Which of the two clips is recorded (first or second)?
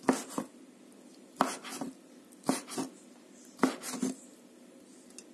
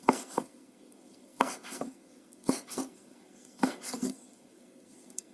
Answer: first